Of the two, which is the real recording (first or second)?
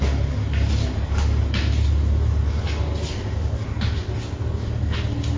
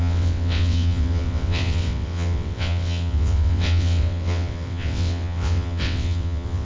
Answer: first